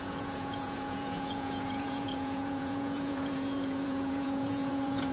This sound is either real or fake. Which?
fake